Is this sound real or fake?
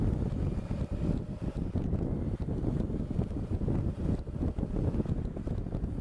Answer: real